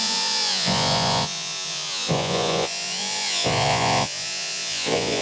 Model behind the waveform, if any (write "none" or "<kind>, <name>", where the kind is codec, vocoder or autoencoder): vocoder, Vocos